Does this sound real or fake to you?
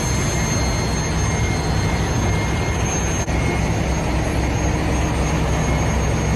real